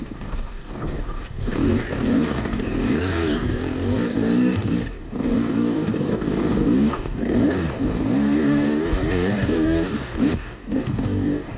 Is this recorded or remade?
remade